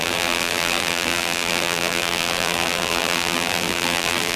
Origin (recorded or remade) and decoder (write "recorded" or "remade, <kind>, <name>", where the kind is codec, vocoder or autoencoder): remade, vocoder, BigVGAN v2